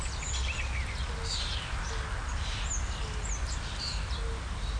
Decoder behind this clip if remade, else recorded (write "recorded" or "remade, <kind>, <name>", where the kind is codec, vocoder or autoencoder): recorded